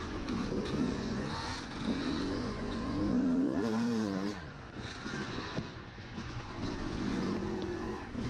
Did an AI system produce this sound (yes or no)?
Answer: yes